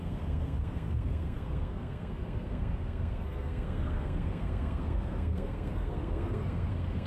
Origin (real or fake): fake